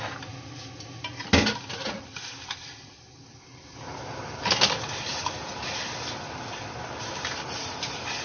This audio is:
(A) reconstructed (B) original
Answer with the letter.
B